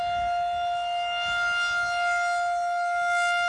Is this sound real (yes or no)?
yes